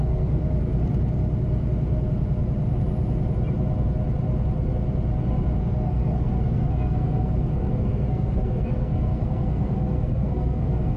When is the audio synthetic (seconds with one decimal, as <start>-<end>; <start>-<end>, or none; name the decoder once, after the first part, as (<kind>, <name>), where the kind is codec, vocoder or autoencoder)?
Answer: 0.0-0.4 (codec, SNAC); 5.6-11.0